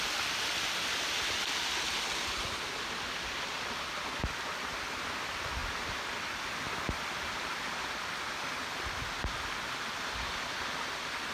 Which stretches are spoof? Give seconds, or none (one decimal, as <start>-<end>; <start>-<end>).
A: none